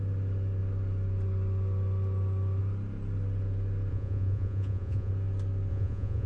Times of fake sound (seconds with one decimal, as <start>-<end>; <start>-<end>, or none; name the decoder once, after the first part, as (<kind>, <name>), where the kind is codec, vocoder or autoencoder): 3.9-5.1 (vocoder, Vocos); 5.7-6.3